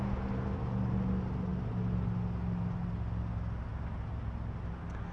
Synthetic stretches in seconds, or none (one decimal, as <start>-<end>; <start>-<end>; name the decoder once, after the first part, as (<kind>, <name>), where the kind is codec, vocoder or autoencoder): none